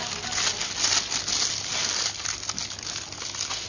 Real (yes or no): yes